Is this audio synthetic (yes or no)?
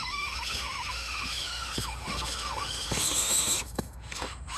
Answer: yes